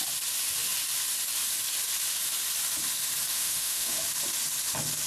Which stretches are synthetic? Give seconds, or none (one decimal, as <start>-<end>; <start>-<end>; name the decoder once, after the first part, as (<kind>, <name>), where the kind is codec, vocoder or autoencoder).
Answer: 3.3-4.0 (autoencoder, DAC-VAE)